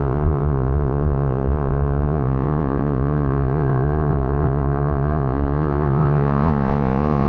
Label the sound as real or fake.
fake